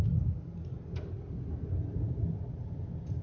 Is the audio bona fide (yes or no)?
yes